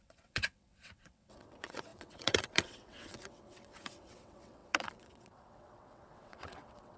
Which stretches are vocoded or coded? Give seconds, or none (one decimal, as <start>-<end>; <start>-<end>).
0.0-7.0